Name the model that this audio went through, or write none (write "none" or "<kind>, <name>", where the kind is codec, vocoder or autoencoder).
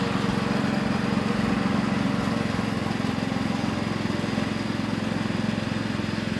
none